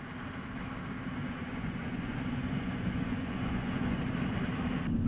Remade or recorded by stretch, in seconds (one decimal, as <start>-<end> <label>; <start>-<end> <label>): 0.0-1.2 recorded; 1.2-4.0 remade; 4.0-5.1 recorded